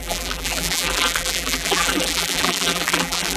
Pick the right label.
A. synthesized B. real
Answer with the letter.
A